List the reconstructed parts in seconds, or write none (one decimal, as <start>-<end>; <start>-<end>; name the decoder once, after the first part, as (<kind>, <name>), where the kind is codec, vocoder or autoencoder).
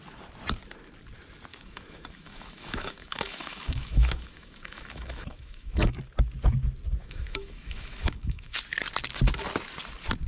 1.5-6.0 (autoencoder, DAC-VAE); 7.0-8.6